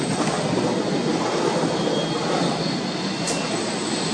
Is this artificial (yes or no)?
no